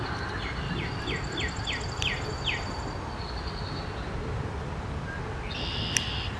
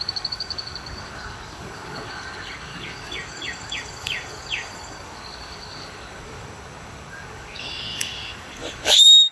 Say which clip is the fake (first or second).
second